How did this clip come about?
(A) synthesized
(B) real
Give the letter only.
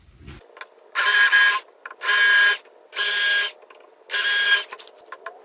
B